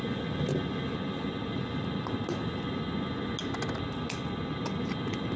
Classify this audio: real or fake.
real